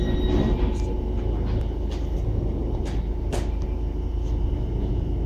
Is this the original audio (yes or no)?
yes